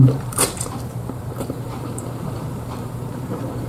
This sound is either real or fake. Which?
fake